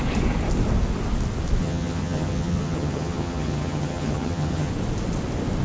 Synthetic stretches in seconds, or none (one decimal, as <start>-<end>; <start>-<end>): 1.6-4.7